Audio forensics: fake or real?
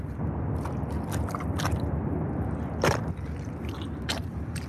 real